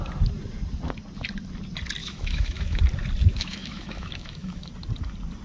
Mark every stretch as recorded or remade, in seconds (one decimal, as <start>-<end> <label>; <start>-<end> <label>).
0.0-2.0 recorded; 2.0-2.8 remade; 2.8-3.3 recorded; 3.3-4.7 remade; 4.7-5.4 recorded